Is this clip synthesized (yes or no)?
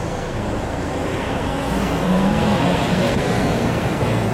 yes